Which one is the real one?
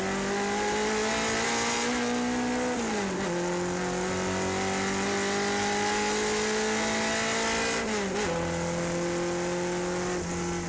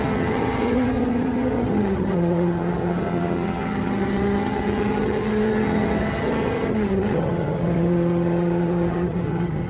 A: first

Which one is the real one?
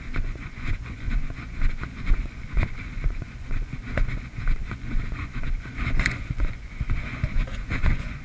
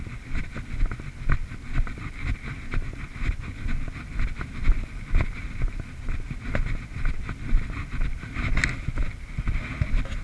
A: second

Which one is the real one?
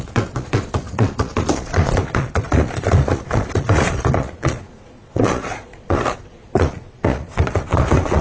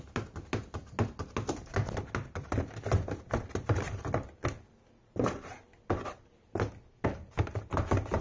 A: second